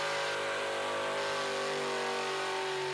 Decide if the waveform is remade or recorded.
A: recorded